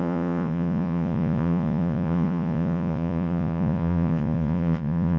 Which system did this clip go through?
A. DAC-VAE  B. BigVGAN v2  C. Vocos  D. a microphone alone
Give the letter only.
C